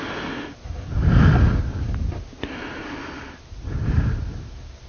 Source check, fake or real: real